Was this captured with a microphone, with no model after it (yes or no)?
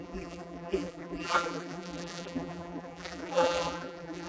no